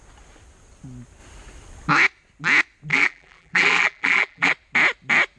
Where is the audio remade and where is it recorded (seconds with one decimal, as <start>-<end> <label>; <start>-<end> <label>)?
0.0-2.9 recorded; 2.9-4.5 remade; 4.5-5.4 recorded